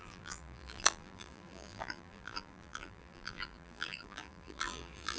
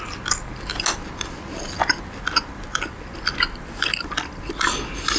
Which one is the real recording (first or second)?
second